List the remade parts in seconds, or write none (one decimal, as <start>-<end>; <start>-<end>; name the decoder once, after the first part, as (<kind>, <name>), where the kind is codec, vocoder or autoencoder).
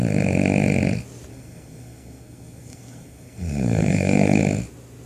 1.3-4.4 (codec, SNAC)